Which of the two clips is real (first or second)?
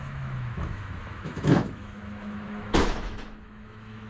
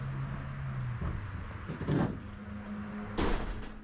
second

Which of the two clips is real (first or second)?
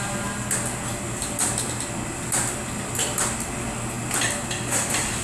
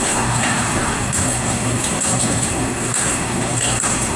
first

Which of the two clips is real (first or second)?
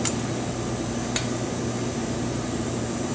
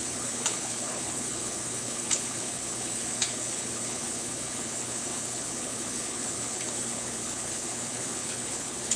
first